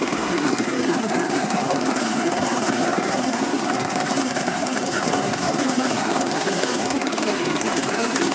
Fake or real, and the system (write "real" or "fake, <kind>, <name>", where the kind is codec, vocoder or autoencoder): fake, codec, SNAC